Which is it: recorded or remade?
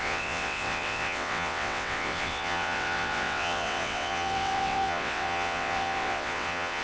remade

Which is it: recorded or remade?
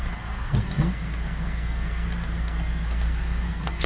remade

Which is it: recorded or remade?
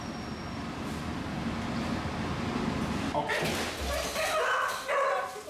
recorded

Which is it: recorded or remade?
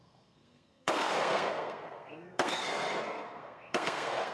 remade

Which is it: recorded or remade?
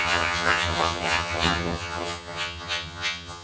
remade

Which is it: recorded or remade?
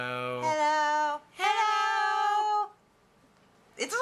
recorded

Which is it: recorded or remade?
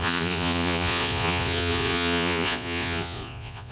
remade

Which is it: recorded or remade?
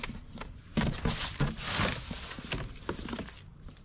recorded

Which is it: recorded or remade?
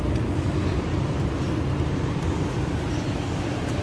recorded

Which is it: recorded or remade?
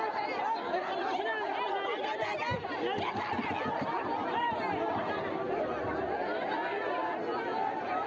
recorded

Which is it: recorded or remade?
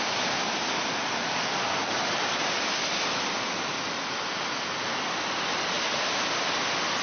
recorded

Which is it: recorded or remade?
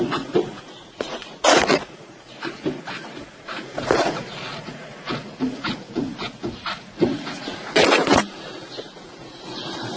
remade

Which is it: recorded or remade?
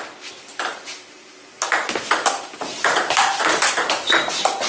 recorded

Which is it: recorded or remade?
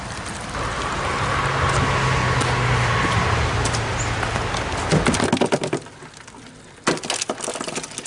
recorded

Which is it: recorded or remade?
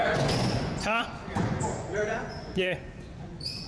remade